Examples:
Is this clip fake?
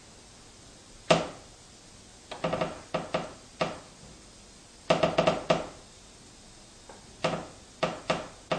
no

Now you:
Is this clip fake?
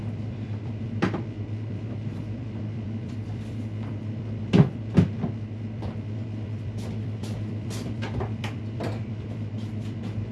yes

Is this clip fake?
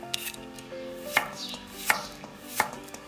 yes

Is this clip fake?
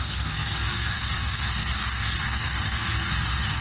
yes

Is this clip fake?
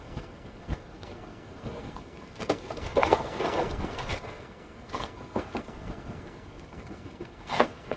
yes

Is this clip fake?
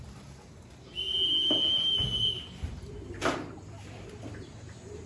yes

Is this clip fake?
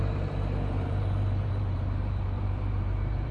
yes